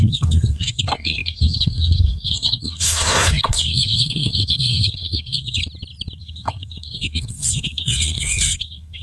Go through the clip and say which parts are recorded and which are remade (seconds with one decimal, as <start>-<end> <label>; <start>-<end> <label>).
0.0-5.6 remade; 5.6-6.2 recorded; 6.2-9.0 remade